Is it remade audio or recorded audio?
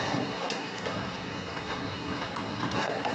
remade